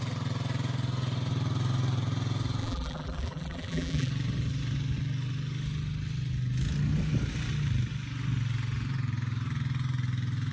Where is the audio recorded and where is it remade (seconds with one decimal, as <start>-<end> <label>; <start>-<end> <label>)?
0.0-2.6 recorded; 2.6-4.1 remade; 4.1-10.5 recorded